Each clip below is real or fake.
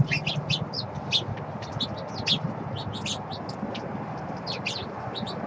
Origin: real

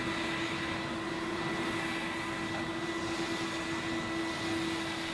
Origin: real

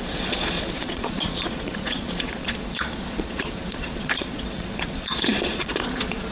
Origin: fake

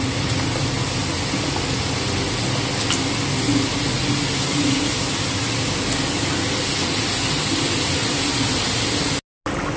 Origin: real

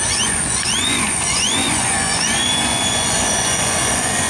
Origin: fake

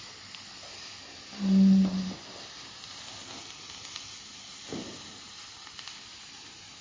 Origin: real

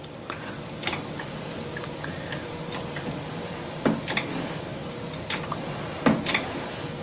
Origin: real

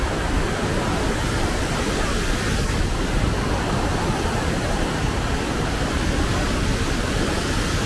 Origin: real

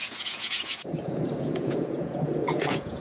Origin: fake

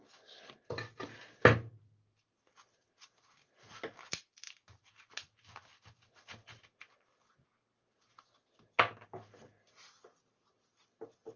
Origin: real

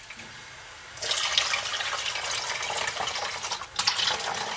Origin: real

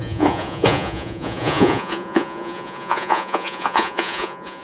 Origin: fake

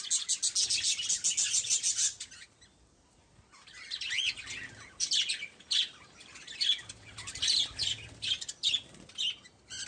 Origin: real